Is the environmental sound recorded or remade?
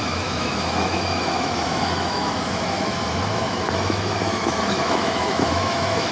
remade